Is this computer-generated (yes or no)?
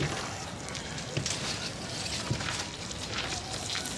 yes